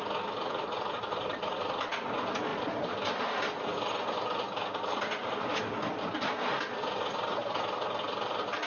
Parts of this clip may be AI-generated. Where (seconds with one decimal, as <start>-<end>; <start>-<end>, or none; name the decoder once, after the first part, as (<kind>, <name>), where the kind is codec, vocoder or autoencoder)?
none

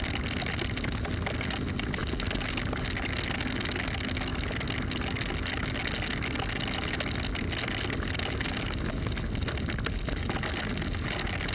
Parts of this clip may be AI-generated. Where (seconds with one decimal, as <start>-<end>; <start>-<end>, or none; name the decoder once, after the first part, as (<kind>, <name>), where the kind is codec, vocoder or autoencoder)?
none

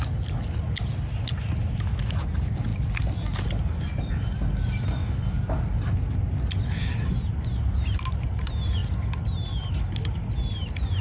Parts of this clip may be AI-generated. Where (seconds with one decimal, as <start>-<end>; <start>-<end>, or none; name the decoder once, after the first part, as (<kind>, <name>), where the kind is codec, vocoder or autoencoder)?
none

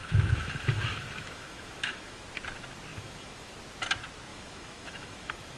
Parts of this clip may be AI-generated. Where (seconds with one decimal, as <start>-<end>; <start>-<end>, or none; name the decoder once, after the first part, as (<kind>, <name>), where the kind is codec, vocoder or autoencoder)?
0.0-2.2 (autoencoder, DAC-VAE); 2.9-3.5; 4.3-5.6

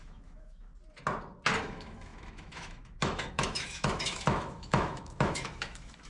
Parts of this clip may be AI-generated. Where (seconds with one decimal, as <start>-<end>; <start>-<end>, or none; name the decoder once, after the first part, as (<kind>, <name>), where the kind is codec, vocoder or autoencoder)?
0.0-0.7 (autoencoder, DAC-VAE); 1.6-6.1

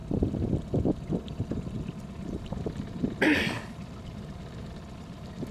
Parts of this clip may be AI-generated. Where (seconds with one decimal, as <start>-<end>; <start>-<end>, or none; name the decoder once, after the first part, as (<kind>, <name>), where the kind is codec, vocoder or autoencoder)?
2.6-5.5 (vocoder, BigVGAN v2)